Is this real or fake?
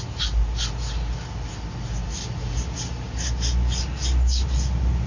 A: real